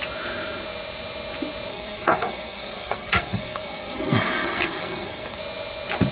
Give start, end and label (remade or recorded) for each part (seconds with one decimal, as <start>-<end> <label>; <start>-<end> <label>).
0.0-1.7 recorded; 1.7-5.4 remade; 5.4-6.1 recorded